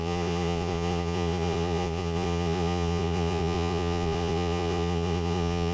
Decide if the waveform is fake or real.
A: fake